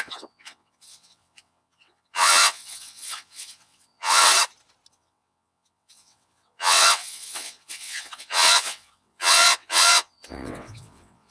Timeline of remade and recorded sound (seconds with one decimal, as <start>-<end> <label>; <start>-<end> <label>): 0.0-4.3 remade; 4.3-4.9 recorded; 4.9-11.3 remade